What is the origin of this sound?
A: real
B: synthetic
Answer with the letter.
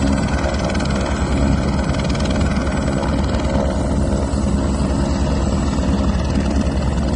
A